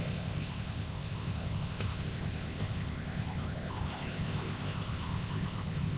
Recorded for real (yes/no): no